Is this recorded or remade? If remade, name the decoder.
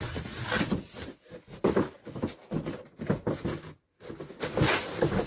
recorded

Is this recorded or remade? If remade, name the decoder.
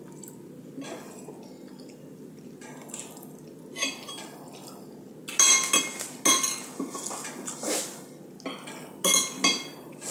recorded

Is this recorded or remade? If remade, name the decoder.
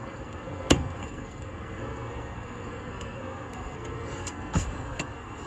remade, codec, SNAC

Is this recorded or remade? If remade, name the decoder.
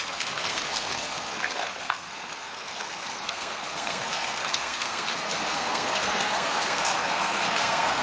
remade, codec, SNAC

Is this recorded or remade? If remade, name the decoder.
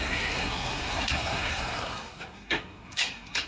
remade, codec, SNAC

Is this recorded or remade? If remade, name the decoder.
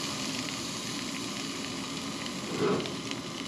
recorded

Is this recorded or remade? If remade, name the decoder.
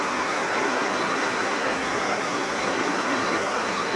remade, codec, SNAC